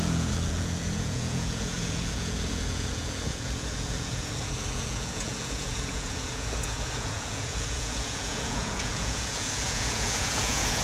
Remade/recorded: remade